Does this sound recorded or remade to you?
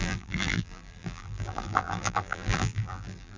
remade